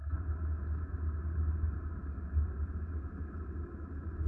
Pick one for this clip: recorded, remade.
recorded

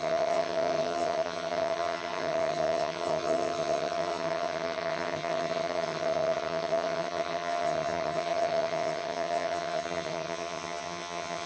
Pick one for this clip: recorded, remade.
remade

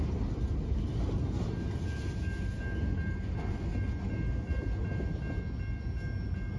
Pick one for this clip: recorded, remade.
recorded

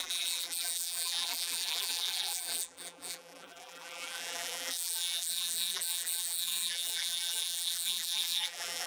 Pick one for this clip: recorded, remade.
remade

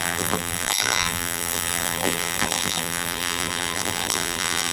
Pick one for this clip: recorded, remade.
remade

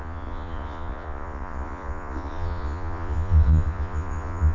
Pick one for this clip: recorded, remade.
remade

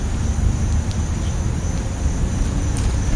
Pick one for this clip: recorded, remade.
recorded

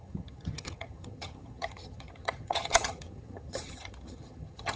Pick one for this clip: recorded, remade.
remade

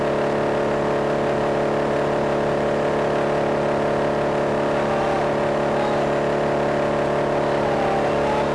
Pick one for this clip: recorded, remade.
recorded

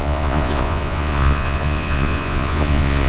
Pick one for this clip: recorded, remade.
remade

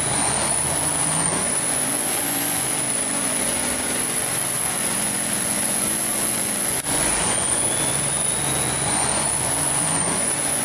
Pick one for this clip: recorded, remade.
remade